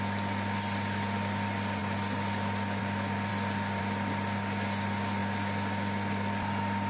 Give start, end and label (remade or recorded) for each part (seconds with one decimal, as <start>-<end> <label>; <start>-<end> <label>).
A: 0.0-6.9 recorded